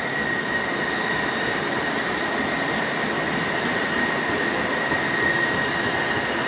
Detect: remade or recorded recorded